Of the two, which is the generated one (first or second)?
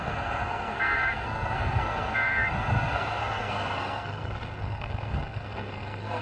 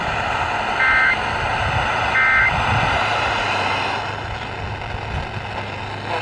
first